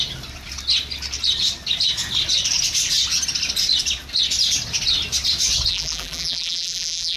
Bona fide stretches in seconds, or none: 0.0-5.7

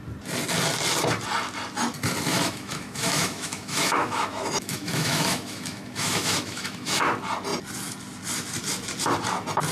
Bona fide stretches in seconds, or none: 0.0-2.3; 7.0-9.7

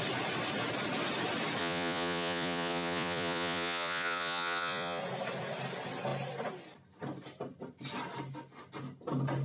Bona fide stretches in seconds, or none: 0.0-1.6; 5.0-9.4

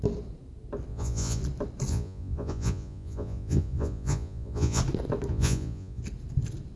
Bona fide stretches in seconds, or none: 0.0-0.9; 1.4-1.9; 4.8-5.3; 6.0-6.8

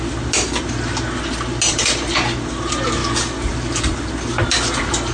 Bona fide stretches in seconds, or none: 0.0-5.1